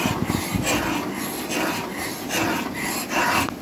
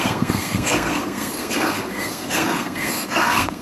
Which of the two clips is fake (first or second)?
second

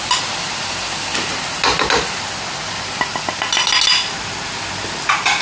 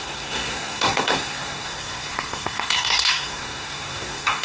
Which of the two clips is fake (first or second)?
second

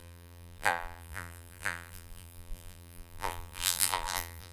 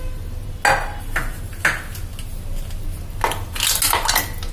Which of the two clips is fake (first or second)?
first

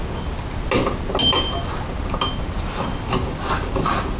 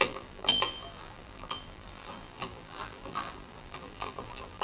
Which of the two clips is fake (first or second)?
second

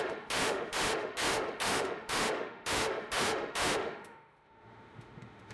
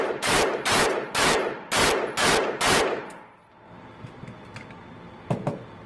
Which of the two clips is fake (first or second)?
first